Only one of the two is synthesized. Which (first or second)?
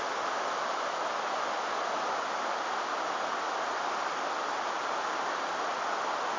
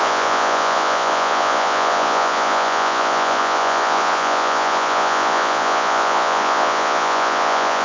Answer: second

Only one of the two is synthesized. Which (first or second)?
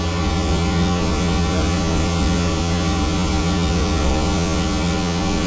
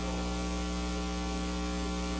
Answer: first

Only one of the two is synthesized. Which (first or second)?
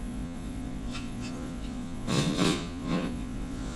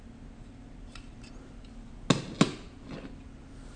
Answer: first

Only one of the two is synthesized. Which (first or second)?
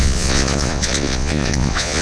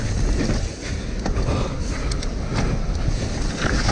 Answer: first